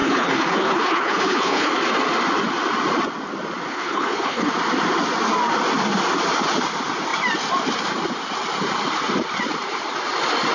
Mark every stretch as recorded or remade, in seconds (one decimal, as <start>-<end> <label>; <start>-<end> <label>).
0.0-1.7 remade; 1.7-3.7 recorded; 3.7-4.5 remade; 4.5-10.5 recorded